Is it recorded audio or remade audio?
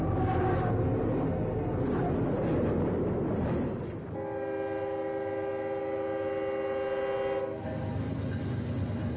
recorded